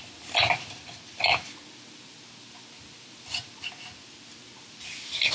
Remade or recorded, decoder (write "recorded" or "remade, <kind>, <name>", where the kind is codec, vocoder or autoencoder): recorded